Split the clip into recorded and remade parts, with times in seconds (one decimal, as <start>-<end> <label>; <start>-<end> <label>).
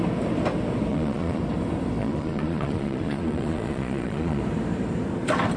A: 0.0-0.9 recorded; 0.9-1.4 remade; 1.4-2.0 recorded; 2.0-4.4 remade; 4.4-5.6 recorded